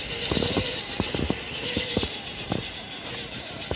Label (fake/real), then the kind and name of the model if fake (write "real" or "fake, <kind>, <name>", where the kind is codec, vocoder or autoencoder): real